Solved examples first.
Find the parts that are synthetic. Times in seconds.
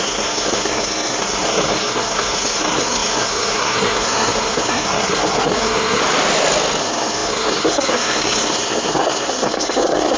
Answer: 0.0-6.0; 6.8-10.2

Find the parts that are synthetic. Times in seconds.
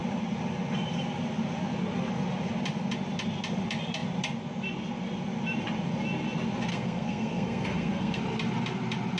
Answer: 6.7-8.2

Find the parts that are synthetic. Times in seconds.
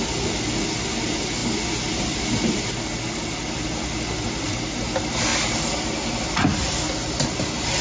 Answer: none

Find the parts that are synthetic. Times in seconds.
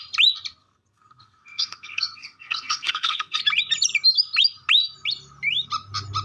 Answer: 0.6-3.4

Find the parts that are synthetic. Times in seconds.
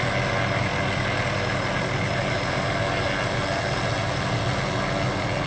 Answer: none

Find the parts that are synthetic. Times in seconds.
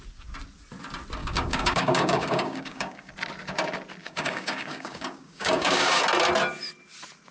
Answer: 1.2-3.1; 4.0-6.0